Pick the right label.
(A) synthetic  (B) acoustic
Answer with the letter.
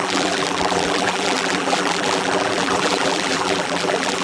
A